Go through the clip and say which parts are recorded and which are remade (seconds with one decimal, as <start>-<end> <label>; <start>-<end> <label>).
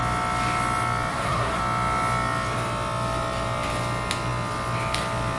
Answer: 0.0-1.1 recorded; 1.1-1.6 remade; 1.6-5.4 recorded